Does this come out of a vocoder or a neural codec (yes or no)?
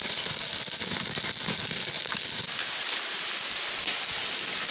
no